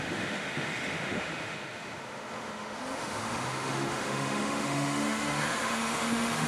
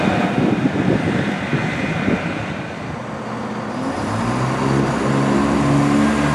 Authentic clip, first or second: second